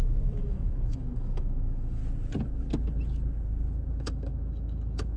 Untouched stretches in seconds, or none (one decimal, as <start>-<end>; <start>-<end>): 2.0-3.9